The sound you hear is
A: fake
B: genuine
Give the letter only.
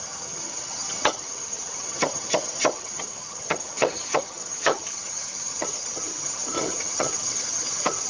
A